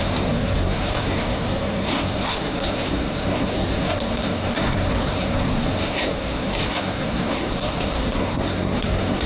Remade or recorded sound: remade